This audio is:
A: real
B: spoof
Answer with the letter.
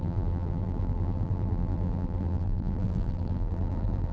B